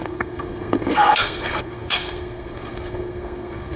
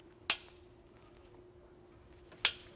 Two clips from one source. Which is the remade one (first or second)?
first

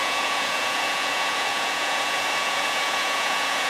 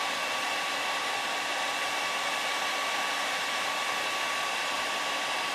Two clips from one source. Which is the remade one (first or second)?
first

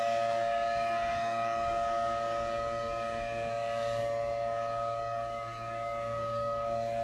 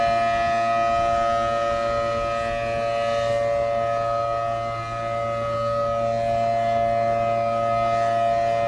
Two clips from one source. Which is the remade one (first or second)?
first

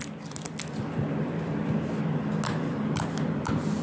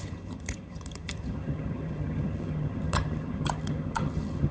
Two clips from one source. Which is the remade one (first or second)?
second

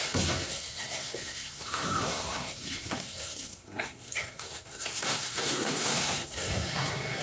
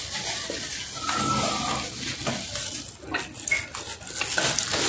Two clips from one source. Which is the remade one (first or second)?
first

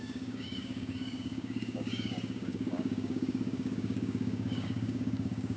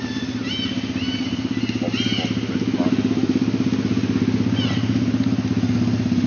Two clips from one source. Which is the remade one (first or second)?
first